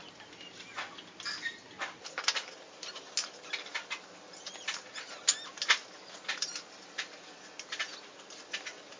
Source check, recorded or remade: recorded